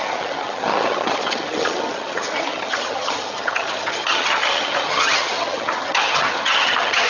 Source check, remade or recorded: remade